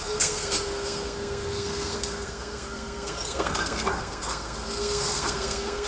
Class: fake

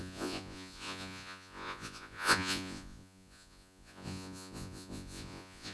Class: fake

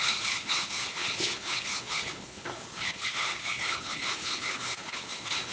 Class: fake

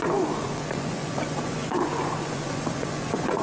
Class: fake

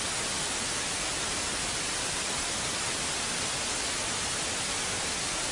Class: real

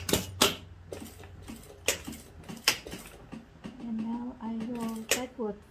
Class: real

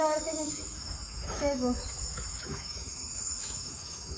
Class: fake